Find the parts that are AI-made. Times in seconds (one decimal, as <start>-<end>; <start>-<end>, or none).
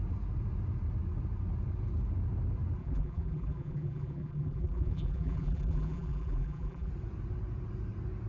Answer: 2.8-6.9